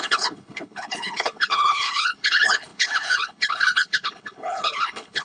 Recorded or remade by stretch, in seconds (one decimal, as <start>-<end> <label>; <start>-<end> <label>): 0.0-5.2 remade